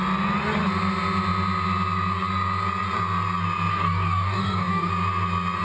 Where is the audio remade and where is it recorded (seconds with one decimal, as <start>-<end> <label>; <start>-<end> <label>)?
0.0-3.7 recorded; 3.7-4.9 remade; 4.9-5.6 recorded